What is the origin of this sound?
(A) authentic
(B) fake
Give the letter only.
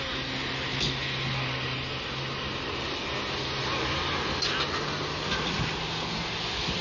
A